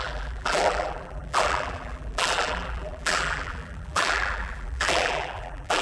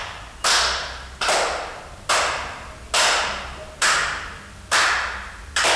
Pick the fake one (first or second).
first